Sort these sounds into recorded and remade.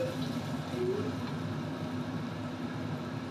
recorded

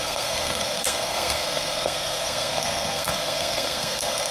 remade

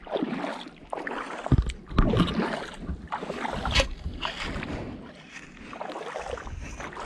recorded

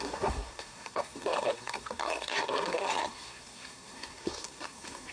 remade